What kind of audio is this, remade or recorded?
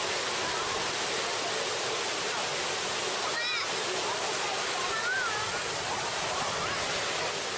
recorded